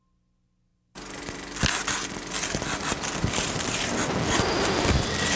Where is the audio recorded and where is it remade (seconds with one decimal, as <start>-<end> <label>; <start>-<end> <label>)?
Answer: 0.0-5.4 recorded